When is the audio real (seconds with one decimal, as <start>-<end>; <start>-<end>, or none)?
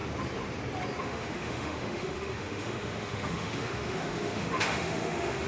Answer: 0.0-1.0